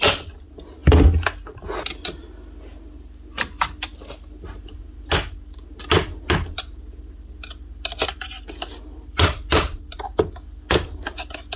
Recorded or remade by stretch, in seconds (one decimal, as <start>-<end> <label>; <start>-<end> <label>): 0.0-11.6 recorded